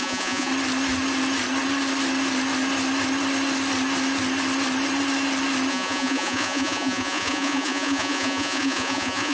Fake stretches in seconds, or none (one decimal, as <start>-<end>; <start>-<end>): 0.0-0.5; 5.7-9.3